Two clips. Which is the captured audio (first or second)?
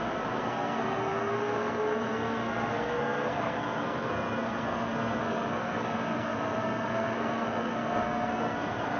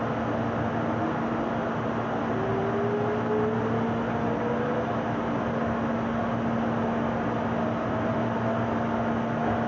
second